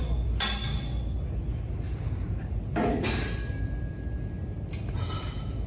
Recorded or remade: recorded